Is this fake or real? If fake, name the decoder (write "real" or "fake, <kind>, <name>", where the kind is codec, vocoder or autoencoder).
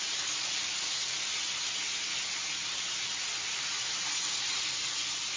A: real